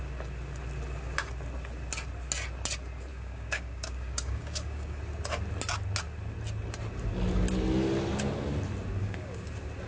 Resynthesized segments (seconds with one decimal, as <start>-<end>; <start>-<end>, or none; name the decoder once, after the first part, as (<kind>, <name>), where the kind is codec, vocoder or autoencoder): 3.1-5.0 (codec, DAC); 9.0-9.5